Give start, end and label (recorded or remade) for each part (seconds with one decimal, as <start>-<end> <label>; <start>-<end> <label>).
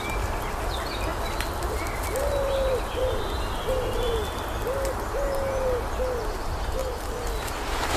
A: 0.0-8.0 recorded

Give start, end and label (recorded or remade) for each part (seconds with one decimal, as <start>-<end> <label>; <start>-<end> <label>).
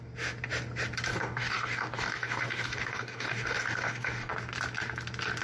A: 0.0-1.1 recorded; 1.1-4.3 remade; 4.3-5.4 recorded